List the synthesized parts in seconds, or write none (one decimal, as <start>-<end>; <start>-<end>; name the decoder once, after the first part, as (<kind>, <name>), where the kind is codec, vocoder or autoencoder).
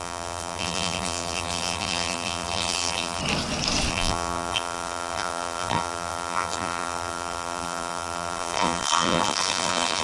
0.0-3.2 (vocoder, BigVGAN v2); 3.9-10.0